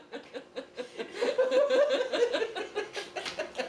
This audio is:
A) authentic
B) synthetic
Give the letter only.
B